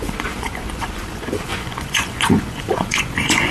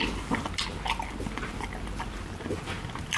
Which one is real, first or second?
second